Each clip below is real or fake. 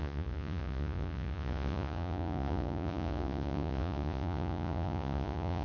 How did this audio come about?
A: fake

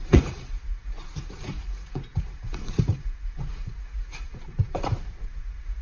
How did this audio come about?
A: fake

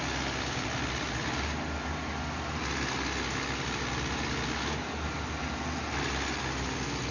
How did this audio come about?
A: real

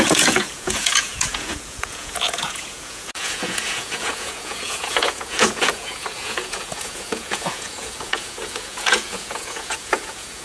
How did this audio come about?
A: fake